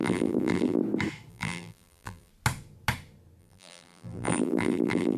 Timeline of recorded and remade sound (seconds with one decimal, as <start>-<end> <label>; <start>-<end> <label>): 0.0-0.8 remade; 0.8-1.3 recorded; 1.3-2.3 remade; 2.3-3.4 recorded; 3.4-5.2 remade